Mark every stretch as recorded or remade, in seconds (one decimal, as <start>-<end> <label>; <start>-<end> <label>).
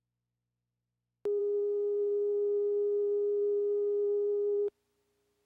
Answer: 0.0-1.4 recorded; 1.4-4.7 remade; 4.7-5.5 recorded